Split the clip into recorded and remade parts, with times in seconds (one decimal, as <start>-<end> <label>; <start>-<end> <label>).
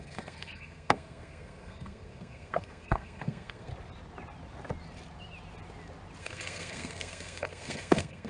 0.0-3.7 remade; 3.7-6.2 recorded; 6.2-8.3 remade